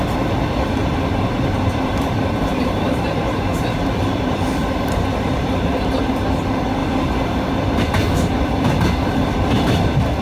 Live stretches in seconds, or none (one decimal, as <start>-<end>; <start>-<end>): 0.0-0.8; 6.0-6.8; 7.5-10.2